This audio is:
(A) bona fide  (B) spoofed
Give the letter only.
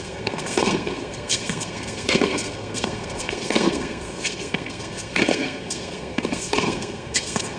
B